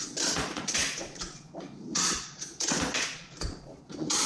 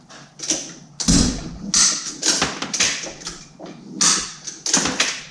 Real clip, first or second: second